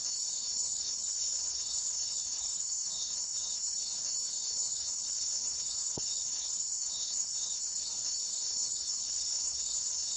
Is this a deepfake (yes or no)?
yes